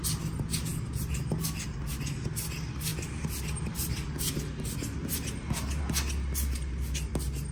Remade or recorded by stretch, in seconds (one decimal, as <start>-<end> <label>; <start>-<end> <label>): 0.0-7.5 recorded